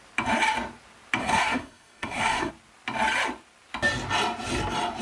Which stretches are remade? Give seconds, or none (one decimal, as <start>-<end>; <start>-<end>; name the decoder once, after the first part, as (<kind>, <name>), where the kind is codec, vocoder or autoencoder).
1.2-2.5 (codec, SNAC)